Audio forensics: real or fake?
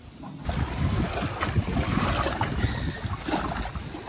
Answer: real